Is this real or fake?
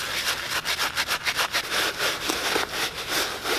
real